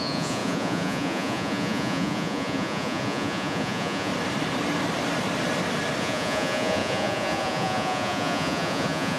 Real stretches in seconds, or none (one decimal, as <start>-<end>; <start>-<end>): 4.1-6.0